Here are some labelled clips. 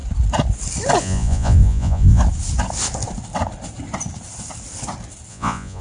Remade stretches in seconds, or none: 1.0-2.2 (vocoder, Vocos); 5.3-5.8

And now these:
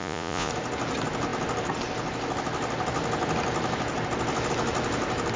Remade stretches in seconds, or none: 0.0-0.5 (vocoder, Vocos)